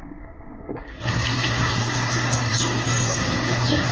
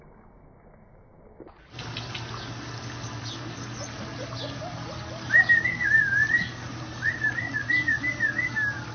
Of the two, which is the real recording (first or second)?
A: second